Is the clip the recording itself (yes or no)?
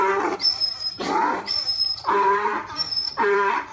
no